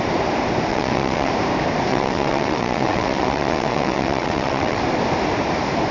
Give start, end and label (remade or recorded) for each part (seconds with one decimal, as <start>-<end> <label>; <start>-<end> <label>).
0.0-0.7 recorded; 0.7-1.3 remade; 1.3-1.9 recorded; 1.9-4.8 remade; 4.8-5.9 recorded